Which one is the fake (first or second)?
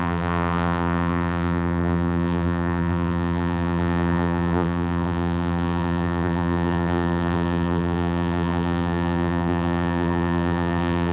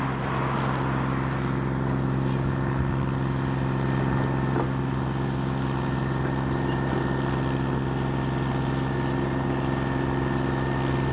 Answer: first